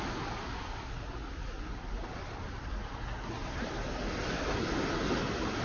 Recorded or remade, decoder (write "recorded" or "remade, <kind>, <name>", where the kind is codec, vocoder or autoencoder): recorded